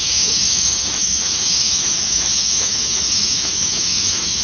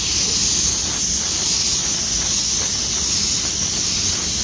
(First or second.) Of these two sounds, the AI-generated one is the first